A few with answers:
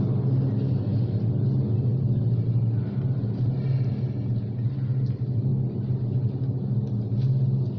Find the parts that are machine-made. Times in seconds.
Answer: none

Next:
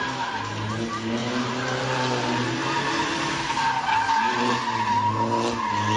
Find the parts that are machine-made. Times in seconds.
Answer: none

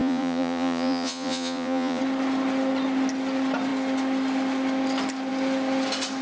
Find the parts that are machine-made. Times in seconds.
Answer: 0.0-2.0 (vocoder, Vocos)

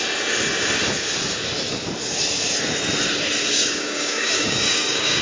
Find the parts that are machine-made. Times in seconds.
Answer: 3.4-5.2 (codec, DAC)